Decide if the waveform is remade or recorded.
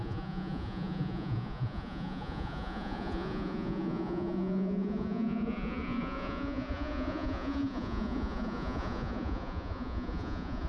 remade